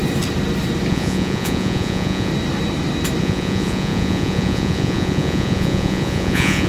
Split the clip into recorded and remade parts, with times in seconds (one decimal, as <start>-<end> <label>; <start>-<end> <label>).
0.0-0.9 recorded; 0.9-2.3 remade; 2.3-3.2 recorded; 3.2-6.7 remade